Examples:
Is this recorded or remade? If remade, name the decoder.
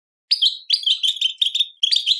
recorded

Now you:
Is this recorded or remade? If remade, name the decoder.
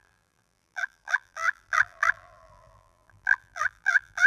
remade, vocoder, BigVGAN v2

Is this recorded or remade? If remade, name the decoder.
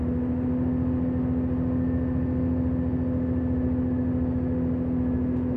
recorded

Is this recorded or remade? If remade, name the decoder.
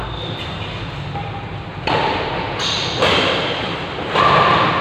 recorded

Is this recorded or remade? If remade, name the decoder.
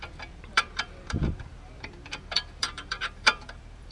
remade, vocoder, BigVGAN v2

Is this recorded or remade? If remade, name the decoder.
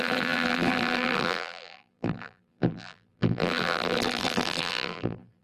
remade, vocoder, BigVGAN v2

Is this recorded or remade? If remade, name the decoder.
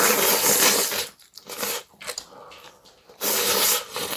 recorded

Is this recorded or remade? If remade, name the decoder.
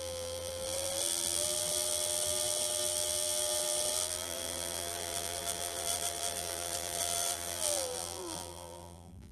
remade, vocoder, BigVGAN v2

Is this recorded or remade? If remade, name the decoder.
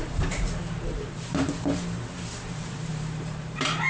remade, vocoder, BigVGAN v2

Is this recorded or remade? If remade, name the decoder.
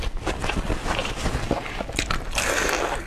recorded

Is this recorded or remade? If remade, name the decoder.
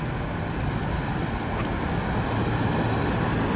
recorded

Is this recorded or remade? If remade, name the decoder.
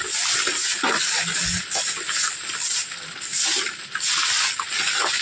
recorded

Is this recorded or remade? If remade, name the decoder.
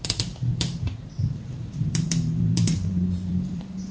remade, vocoder, BigVGAN v2